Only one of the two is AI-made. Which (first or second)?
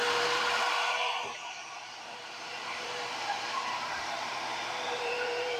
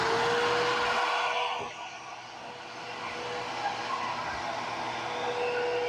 first